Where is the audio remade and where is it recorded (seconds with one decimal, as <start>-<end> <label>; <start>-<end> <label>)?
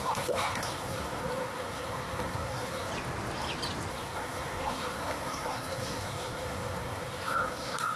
0.0-2.9 remade; 2.9-3.9 recorded; 3.9-8.0 remade